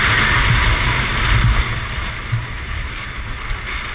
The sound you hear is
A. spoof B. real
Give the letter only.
B